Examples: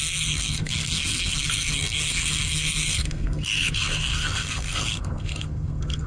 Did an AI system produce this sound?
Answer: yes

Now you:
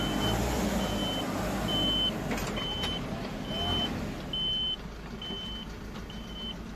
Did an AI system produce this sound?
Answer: no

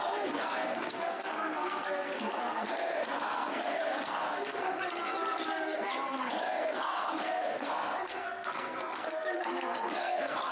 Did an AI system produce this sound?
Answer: yes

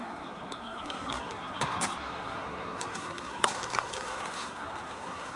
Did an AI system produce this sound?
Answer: yes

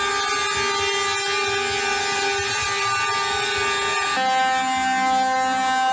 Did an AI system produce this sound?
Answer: no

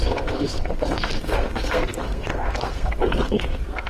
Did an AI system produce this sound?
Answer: yes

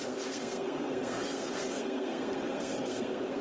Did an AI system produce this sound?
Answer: yes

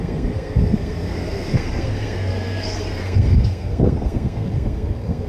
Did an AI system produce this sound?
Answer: yes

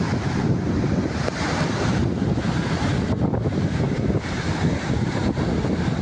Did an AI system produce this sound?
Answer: no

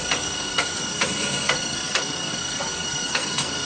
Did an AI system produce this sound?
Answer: yes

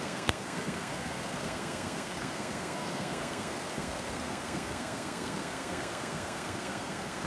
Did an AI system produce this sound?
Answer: yes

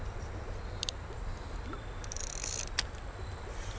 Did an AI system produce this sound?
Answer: no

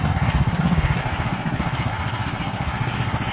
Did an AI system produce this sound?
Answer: yes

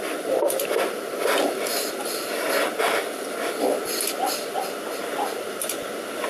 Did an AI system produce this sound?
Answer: no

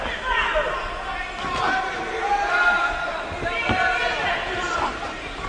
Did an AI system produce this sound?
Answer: no